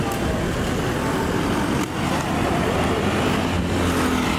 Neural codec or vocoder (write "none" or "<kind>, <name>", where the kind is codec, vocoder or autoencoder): none